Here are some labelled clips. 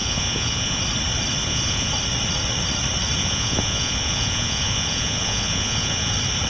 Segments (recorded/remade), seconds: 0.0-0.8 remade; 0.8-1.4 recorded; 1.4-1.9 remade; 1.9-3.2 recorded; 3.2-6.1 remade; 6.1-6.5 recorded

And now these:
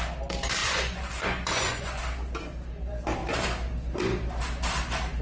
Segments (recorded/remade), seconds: 0.0-0.6 recorded; 0.6-2.0 remade; 2.0-5.2 recorded

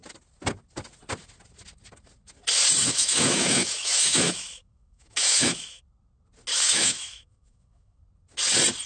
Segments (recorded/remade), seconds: 0.0-2.8 recorded; 2.8-5.8 remade; 5.8-6.5 recorded; 6.5-8.0 remade; 8.0-8.9 recorded

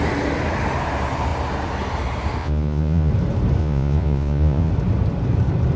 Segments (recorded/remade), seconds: 0.0-2.4 recorded; 2.4-3.1 remade; 3.1-3.6 recorded; 3.6-4.7 remade; 4.7-5.8 recorded

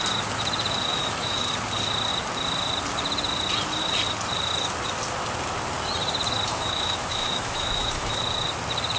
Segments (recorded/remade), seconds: 0.0-0.9 recorded; 0.9-1.5 remade; 1.5-6.5 recorded; 6.5-8.2 remade; 8.2-9.0 recorded